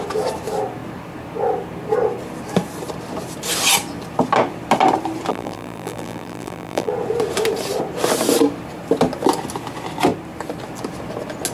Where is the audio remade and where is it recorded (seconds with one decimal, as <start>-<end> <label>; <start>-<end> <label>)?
0.0-5.3 recorded; 5.3-6.9 remade; 6.9-11.5 recorded